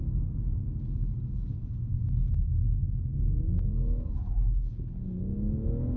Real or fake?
real